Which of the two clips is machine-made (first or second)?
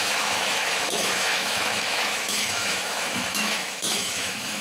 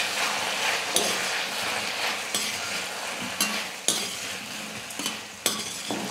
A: first